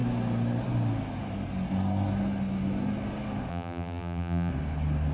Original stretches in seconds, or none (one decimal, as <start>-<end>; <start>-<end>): 0.0-3.5; 4.5-5.1